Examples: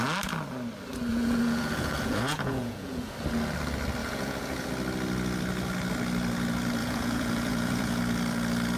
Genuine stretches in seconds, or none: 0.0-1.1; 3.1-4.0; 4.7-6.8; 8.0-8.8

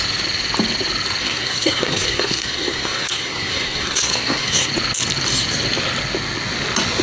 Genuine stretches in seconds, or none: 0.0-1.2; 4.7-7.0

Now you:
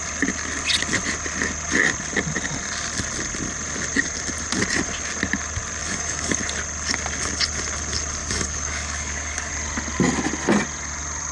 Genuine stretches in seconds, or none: 0.0-5.8; 6.4-8.2; 9.5-11.3